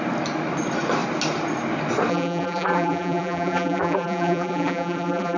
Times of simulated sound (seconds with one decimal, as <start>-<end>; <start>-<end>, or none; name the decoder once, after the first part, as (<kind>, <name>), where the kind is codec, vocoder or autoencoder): 2.1-5.4 (vocoder, BigVGAN v2)